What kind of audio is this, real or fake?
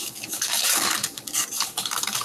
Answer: fake